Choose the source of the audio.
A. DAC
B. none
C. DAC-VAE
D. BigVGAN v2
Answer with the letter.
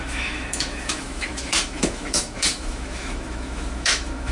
C